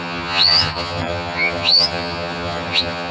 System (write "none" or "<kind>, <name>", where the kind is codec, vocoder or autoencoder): vocoder, HiFi-GAN